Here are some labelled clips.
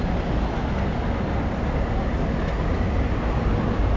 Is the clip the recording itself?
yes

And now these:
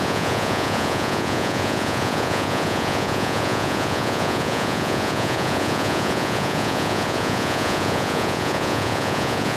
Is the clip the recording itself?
no